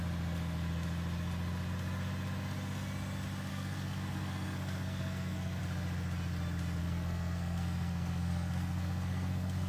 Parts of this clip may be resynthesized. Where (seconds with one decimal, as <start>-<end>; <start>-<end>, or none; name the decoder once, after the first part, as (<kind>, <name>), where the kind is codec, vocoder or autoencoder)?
3.5-5.6 (codec, SNAC); 6.8-9.7